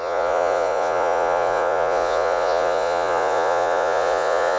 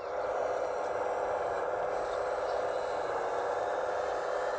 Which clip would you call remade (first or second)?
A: first